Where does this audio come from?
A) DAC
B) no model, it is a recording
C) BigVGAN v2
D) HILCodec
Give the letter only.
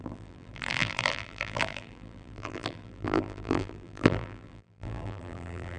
C